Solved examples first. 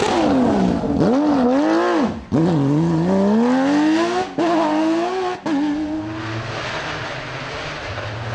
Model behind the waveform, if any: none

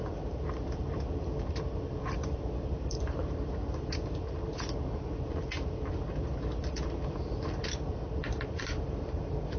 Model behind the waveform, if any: vocoder, BigVGAN v2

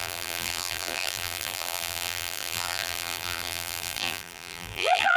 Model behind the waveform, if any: vocoder, BigVGAN v2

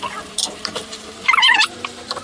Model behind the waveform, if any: vocoder, BigVGAN v2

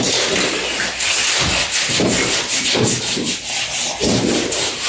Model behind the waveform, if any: none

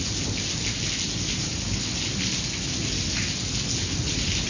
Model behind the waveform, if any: none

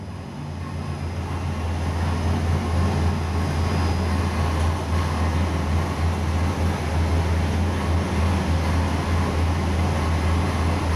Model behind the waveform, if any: none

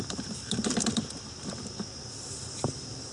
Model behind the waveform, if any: vocoder, BigVGAN v2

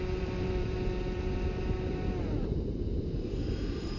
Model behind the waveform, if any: vocoder, BigVGAN v2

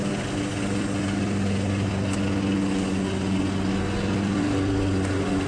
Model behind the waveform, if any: none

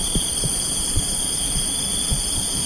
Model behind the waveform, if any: vocoder, BigVGAN v2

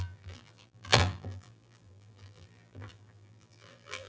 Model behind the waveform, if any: vocoder, BigVGAN v2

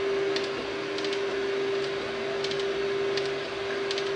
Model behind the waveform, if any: none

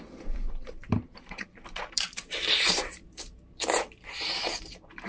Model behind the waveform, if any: vocoder, BigVGAN v2